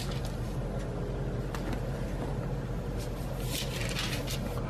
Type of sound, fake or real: real